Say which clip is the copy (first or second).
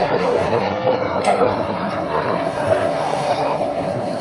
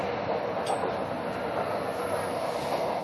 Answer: first